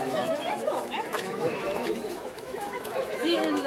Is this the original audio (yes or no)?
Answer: no